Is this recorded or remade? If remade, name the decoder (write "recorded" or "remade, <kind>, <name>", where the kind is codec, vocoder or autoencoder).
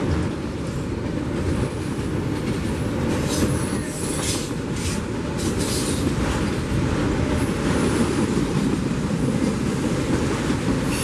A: recorded